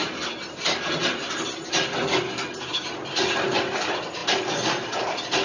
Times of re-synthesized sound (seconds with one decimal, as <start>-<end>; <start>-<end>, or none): none